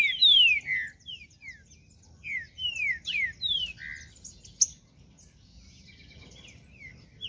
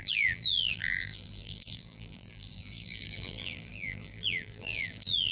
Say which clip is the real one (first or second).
first